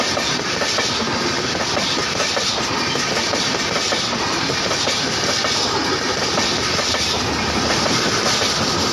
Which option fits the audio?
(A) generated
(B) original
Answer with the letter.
B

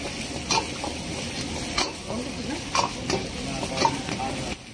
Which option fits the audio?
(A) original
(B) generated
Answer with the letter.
A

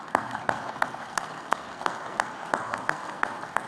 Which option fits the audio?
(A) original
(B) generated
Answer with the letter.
B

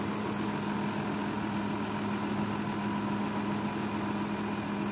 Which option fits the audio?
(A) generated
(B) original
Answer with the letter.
B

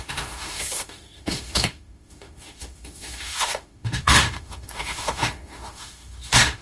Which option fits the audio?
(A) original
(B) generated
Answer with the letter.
B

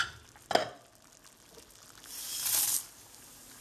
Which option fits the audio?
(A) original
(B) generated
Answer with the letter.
A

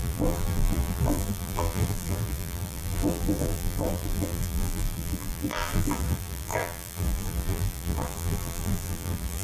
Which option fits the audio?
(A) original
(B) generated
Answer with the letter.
B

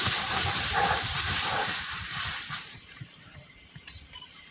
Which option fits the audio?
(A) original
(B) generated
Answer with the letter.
B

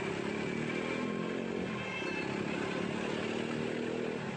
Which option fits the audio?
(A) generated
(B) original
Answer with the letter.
B